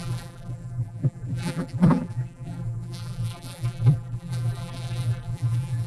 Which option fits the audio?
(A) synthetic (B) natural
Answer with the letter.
A